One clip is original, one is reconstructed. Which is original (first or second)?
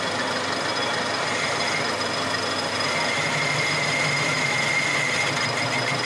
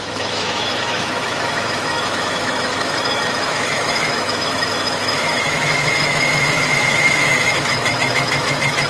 first